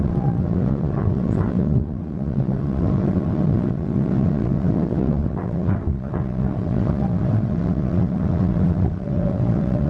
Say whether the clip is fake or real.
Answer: fake